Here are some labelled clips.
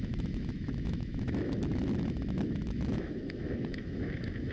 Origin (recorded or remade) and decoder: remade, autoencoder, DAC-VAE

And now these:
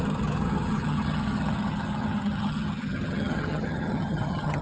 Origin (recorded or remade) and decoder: remade, vocoder, HiFi-GAN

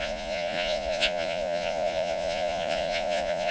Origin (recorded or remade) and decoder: remade, vocoder, Vocos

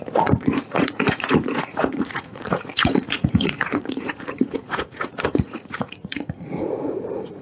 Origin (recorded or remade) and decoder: remade, vocoder, Vocos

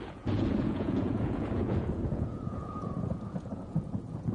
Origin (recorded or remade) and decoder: remade, vocoder, Vocos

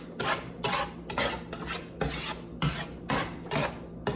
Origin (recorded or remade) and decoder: recorded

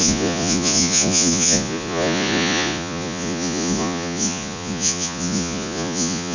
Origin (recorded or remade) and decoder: remade, vocoder, Vocos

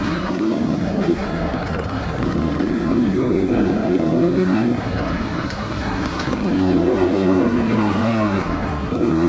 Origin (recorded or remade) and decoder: remade, codec, SNAC